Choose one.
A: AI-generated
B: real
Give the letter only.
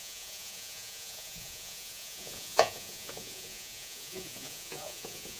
A